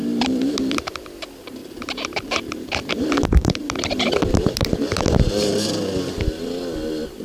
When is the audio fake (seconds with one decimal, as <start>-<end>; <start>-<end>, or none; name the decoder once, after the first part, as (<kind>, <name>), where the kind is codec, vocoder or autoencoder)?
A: 0.0-0.9 (vocoder, BigVGAN v2); 1.6-5.9